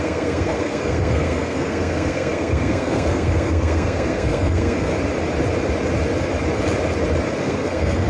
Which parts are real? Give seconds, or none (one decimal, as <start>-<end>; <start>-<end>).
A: 4.9-7.4